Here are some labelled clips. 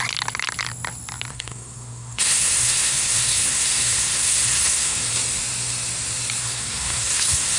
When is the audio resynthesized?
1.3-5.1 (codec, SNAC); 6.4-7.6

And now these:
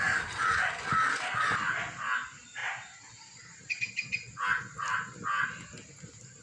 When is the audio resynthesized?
none

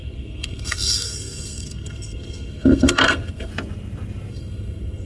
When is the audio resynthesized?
0.0-3.5 (codec, SNAC); 4.3-5.1

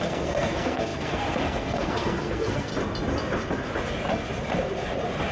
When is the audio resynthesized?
0.0-2.7 (codec, SNAC)

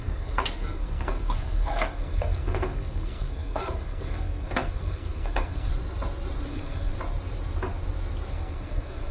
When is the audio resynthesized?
0.0-5.7 (codec, SNAC); 6.5-6.9; 8.3-9.1

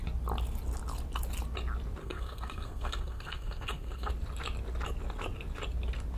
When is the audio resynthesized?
2.0-4.1 (codec, SNAC)

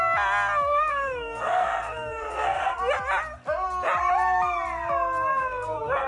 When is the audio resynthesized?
0.7-2.8 (codec, SNAC); 5.3-6.1

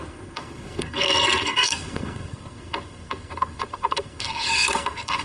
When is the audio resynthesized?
0.0-5.2 (codec, SNAC)